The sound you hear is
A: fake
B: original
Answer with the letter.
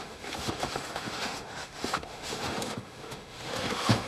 A